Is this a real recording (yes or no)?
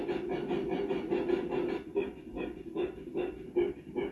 yes